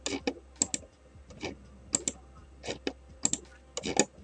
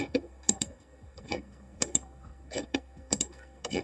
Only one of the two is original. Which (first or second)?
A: first